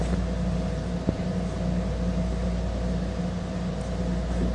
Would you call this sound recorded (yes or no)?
yes